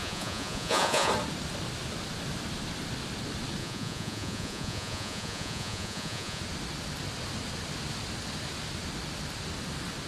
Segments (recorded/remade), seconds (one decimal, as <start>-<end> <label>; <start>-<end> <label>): 0.0-1.1 remade; 1.1-3.6 recorded; 3.6-6.4 remade; 6.4-10.1 recorded